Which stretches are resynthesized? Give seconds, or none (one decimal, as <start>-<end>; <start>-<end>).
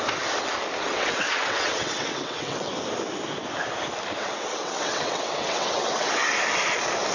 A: 0.9-2.7; 4.2-6.4